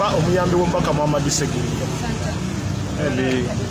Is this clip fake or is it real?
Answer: real